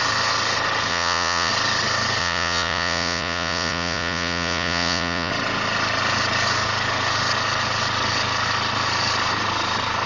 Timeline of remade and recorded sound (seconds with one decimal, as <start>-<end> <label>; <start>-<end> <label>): 0.0-0.9 recorded; 0.9-1.5 remade; 1.5-2.2 recorded; 2.2-5.3 remade; 5.3-10.1 recorded